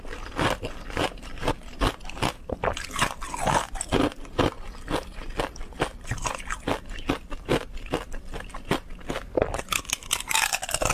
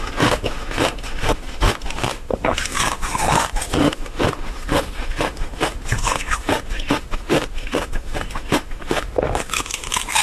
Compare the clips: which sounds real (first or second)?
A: first